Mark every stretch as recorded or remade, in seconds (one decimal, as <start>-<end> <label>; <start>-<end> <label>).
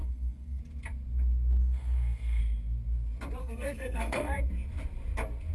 0.0-0.6 remade; 0.6-1.6 recorded; 1.6-2.4 remade; 2.4-3.4 recorded; 3.4-4.4 remade; 4.4-5.5 recorded